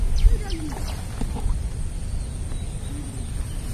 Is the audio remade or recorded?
recorded